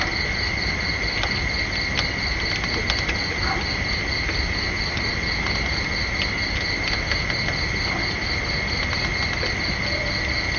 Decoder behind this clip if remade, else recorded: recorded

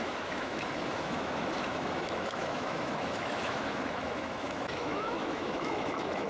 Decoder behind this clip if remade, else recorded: remade, autoencoder, DAC-VAE